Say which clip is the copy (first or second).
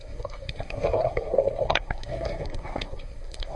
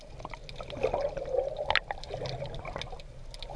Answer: first